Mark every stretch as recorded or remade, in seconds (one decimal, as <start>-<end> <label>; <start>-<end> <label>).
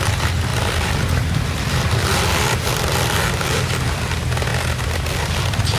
0.0-0.5 recorded; 0.5-4.0 remade; 4.0-5.8 recorded